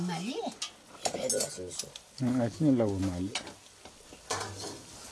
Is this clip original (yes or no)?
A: yes